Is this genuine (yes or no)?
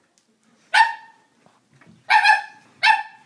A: yes